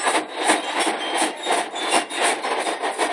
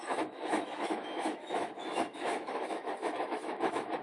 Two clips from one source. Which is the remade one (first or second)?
second